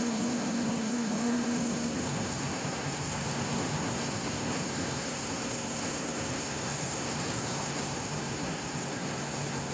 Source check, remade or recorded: remade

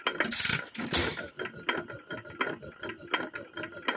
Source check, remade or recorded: recorded